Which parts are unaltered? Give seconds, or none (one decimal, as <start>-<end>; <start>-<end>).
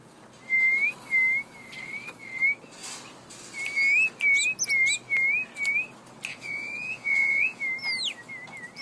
0.0-6.3; 7.6-8.8